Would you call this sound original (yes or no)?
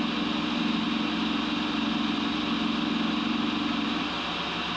yes